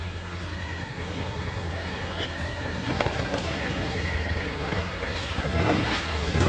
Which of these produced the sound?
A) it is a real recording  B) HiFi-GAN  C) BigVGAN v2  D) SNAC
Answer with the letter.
D